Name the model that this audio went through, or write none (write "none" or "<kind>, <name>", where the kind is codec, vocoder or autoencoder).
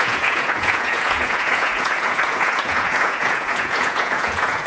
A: vocoder, Vocos